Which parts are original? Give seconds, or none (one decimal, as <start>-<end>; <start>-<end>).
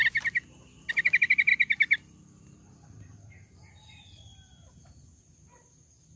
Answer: 0.0-6.2